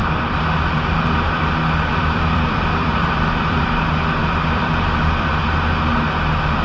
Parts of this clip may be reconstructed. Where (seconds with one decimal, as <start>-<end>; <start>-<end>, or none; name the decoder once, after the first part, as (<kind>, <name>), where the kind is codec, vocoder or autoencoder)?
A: 0.0-1.0 (vocoder, BigVGAN v2); 1.9-3.6; 4.2-5.4